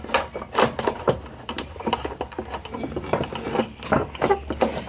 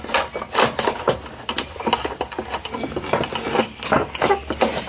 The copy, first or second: first